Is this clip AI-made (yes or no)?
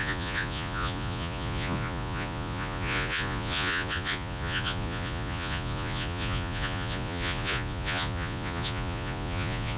yes